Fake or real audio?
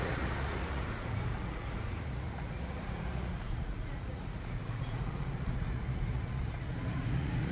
fake